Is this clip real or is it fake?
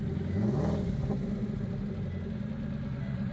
real